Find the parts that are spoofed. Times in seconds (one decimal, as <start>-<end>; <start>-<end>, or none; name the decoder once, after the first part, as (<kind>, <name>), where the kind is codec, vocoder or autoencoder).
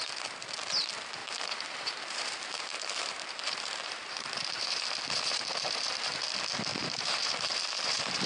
1.2-6.2 (vocoder, BigVGAN v2); 6.7-8.3